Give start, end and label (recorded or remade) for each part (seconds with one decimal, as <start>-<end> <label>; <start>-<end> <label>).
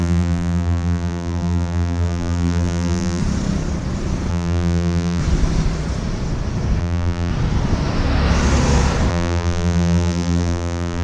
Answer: 0.0-3.2 remade; 3.2-4.3 recorded; 4.3-5.2 remade; 5.2-6.8 recorded; 6.8-7.3 remade; 7.3-9.1 recorded; 9.1-11.0 remade